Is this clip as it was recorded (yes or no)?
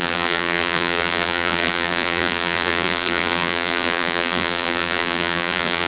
no